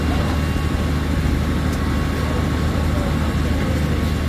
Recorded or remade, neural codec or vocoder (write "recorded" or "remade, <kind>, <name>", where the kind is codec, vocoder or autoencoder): recorded